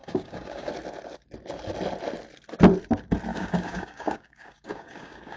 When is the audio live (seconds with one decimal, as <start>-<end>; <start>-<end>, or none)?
0.7-3.3